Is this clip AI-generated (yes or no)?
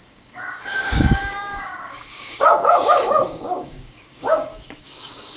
yes